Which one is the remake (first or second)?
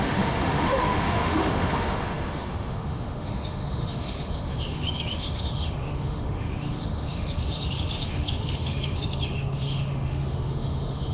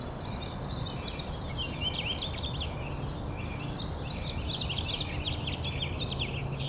first